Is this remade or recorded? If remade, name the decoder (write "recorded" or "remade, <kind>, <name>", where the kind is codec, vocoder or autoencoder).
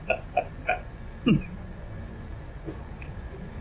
remade, vocoder, Vocos